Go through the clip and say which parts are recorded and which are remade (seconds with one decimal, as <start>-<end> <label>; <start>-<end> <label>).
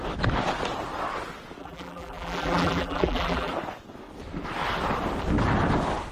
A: 0.0-1.6 recorded; 1.6-3.5 remade; 3.5-6.1 recorded